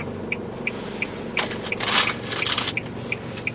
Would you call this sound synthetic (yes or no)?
no